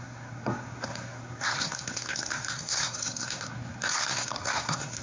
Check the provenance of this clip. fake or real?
fake